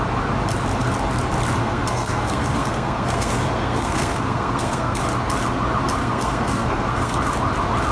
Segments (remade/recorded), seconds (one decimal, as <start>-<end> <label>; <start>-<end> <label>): 0.0-1.6 recorded; 1.6-5.0 remade; 5.0-6.0 recorded; 6.0-7.2 remade; 7.2-7.9 recorded